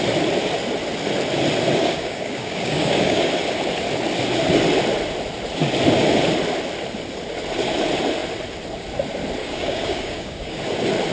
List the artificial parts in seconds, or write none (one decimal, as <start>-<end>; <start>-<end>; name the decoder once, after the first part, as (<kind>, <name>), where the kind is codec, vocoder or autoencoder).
1.8-3.3 (codec, DAC); 9.4-10.6